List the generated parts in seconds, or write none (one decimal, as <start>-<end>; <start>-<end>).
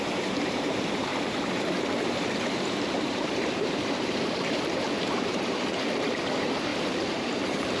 0.0-7.8